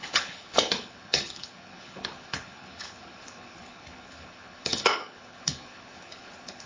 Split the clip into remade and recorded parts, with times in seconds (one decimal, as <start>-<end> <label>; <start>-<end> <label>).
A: 0.0-6.7 remade